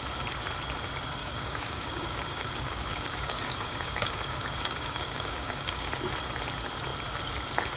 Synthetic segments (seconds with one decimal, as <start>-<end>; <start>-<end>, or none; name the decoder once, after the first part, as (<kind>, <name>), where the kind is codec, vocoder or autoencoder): 1.2-5.9 (codec, DAC)